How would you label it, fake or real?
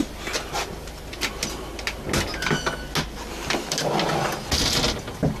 real